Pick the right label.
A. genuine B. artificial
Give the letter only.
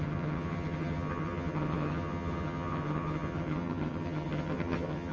B